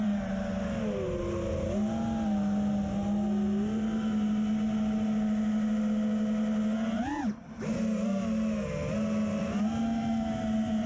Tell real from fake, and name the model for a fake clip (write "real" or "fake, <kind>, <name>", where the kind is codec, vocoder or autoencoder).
real